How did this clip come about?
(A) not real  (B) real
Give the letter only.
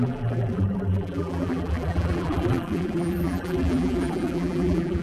A